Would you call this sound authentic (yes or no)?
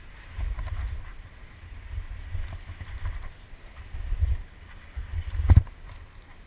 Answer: yes